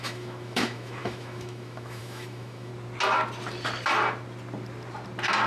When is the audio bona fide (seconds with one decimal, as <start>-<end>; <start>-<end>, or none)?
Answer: 2.7-5.5